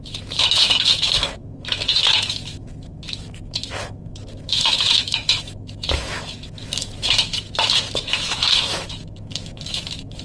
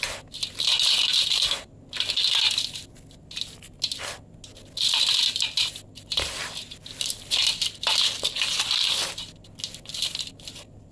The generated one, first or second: first